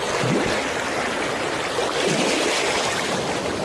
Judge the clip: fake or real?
real